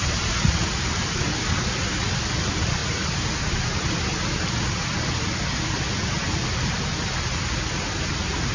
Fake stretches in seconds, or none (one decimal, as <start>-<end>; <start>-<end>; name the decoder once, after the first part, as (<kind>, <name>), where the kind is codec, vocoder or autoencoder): 2.8-3.9 (vocoder, BigVGAN v2)